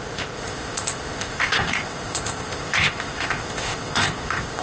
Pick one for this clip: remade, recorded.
remade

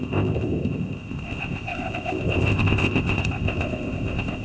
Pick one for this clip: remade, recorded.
remade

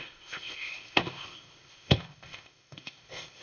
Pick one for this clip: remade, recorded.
remade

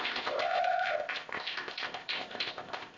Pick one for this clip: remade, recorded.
remade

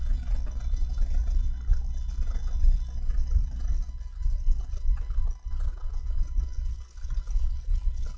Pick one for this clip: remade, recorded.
recorded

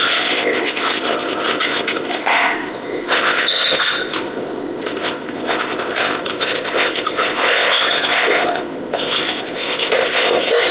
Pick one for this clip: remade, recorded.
remade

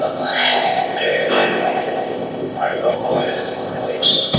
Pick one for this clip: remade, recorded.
remade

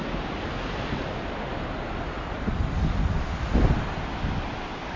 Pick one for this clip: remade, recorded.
recorded